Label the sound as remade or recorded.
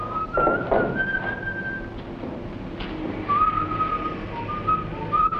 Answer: recorded